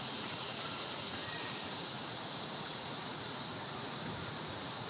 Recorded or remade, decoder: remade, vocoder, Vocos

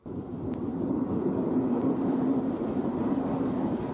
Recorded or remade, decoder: remade, vocoder, BigVGAN v2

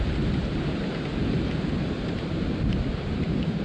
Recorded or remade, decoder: remade, vocoder, BigVGAN v2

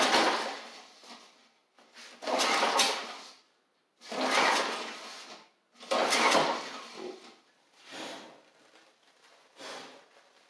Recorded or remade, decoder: recorded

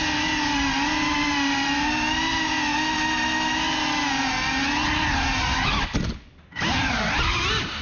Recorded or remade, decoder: recorded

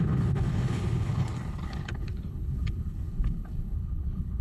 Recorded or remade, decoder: remade, codec, HILCodec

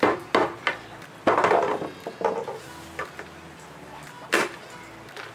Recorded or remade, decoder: recorded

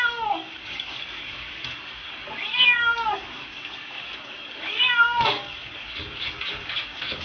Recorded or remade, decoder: remade, codec, DAC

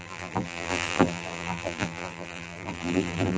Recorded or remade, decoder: remade, vocoder, BigVGAN v2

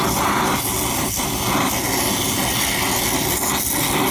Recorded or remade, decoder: recorded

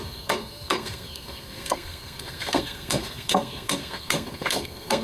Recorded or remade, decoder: remade, codec, SNAC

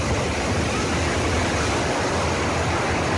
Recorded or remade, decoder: recorded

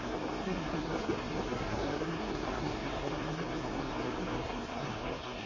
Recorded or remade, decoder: remade, codec, SNAC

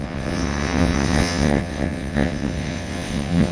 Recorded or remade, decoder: remade, vocoder, WaveNeXt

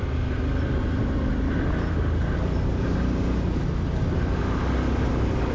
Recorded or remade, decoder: recorded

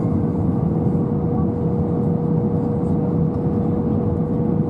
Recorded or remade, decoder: recorded